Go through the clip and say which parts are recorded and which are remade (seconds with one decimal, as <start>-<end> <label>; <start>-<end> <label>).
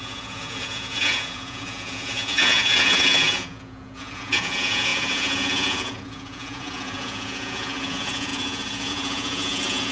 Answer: 0.0-9.9 remade